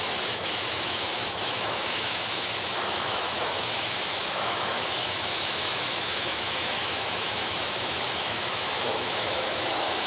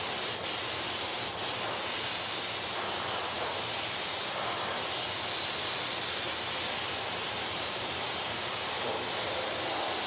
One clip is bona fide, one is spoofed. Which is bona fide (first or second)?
second